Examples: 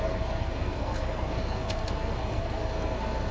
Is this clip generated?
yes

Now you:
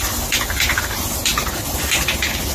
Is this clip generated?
no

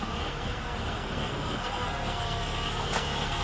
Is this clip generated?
yes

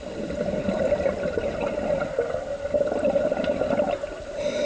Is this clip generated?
no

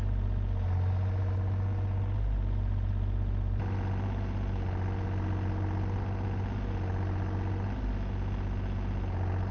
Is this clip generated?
no